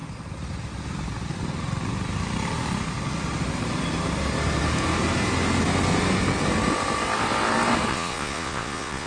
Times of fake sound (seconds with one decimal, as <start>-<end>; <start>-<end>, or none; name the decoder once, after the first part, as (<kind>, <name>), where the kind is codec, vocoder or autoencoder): 7.9-9.1 (vocoder, Vocos)